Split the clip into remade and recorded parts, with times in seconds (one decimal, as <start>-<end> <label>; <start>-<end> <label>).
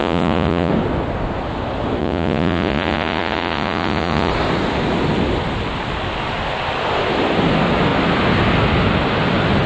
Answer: 0.0-0.7 remade; 0.7-2.0 recorded; 2.0-4.3 remade; 4.3-9.7 recorded